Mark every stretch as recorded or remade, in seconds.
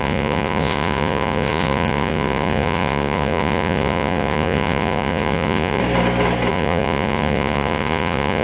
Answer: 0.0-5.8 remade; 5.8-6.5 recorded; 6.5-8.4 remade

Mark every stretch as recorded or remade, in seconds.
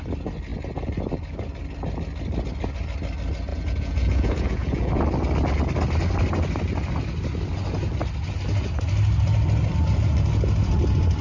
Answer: 0.0-3.5 recorded; 3.5-4.9 remade; 4.9-11.2 recorded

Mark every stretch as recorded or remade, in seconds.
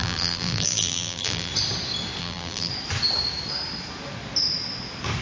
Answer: 0.0-1.5 remade; 1.5-2.2 recorded; 2.2-2.7 remade; 2.7-5.2 recorded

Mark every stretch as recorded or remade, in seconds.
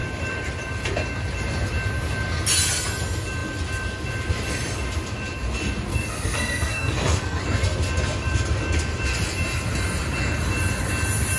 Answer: 0.0-5.9 recorded; 5.9-7.4 remade; 7.4-11.4 recorded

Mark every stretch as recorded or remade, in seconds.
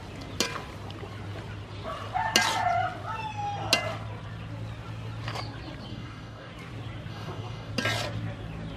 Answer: 0.0-5.9 recorded; 5.9-6.5 remade; 6.5-7.1 recorded; 7.1-7.7 remade; 7.7-8.8 recorded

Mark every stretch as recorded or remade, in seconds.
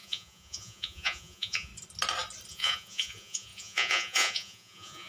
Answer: 0.0-1.7 remade; 1.7-2.5 recorded; 2.5-5.1 remade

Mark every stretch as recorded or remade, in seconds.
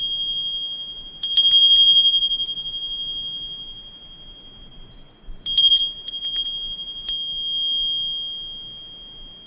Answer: 0.0-9.5 recorded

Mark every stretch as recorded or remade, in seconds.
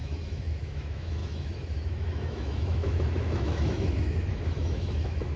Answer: 0.0-5.4 remade